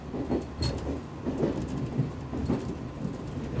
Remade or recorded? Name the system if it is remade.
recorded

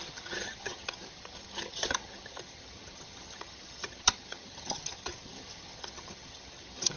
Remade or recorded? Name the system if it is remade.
remade, vocoder, HiFi-GAN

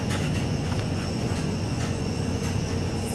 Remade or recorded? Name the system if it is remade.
remade, vocoder, Vocos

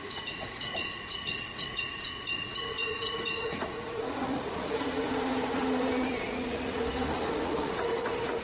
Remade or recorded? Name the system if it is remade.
remade, vocoder, Vocos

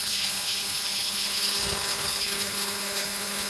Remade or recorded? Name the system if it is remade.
remade, codec, HILCodec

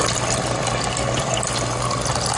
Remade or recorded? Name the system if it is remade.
recorded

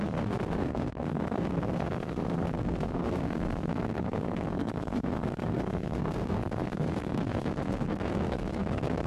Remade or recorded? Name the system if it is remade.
remade, codec, SNAC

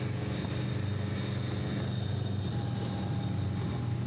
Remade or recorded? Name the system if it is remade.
recorded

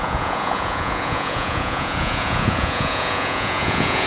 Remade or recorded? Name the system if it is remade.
remade, vocoder, Vocos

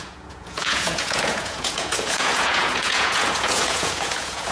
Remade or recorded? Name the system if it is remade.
remade, vocoder, Vocos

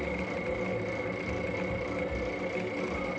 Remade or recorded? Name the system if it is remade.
recorded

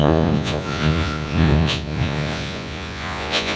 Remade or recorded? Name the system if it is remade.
remade, vocoder, Vocos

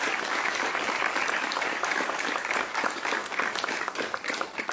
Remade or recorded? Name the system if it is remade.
remade, codec, DAC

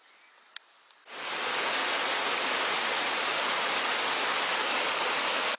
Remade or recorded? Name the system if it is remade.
recorded